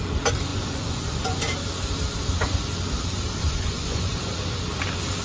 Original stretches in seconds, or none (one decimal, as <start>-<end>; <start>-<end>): 0.0-0.5; 1.4-3.4; 4.4-5.2